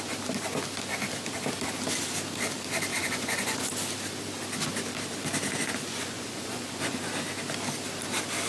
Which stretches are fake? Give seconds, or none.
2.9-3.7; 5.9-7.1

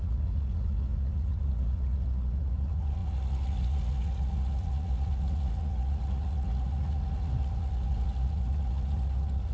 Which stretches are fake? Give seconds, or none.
0.0-9.5

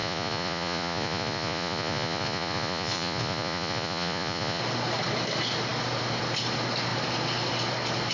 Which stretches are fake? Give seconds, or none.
0.0-4.6

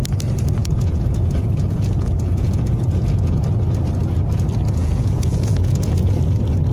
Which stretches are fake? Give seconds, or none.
0.6-3.4; 4.8-6.1

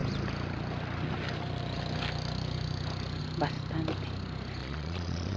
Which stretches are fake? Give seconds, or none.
4.6-5.4

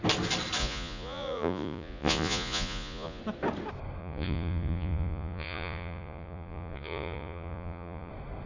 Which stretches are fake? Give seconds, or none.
0.6-3.2; 4.0-8.1

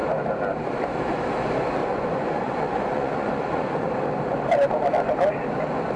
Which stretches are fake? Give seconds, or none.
1.8-3.9